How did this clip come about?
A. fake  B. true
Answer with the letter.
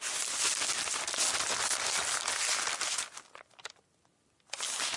B